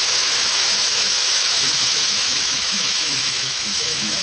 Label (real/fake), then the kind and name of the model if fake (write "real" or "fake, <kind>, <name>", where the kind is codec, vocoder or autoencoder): fake, autoencoder, DAC-VAE